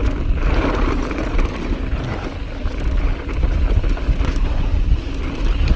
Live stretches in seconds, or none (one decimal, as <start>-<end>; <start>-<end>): 0.0-5.8

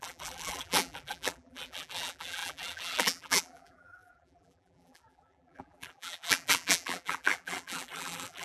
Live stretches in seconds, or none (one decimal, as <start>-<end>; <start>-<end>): none

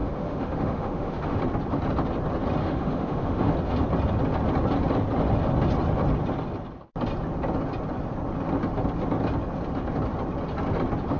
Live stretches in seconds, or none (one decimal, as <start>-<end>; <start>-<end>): 1.4-2.6; 3.5-11.2

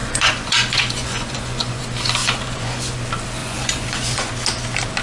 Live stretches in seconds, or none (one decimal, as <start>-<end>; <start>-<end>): 1.8-2.2; 3.0-3.4; 4.3-5.0

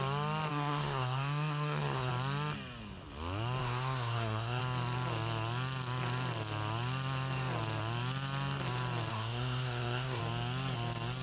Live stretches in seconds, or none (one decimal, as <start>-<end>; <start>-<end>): 0.0-0.5; 2.1-3.6; 4.6-9.1; 10.2-11.2